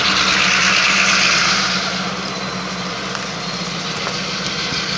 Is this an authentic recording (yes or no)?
yes